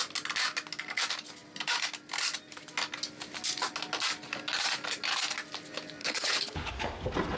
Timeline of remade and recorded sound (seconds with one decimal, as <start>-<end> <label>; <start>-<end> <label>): 0.0-6.0 recorded; 6.0-6.7 remade; 6.7-7.4 recorded